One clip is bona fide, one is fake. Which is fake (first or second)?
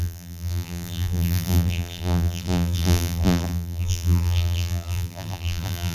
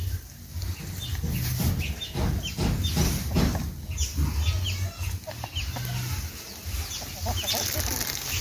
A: first